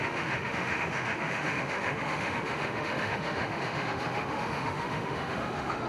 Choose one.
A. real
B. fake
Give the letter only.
B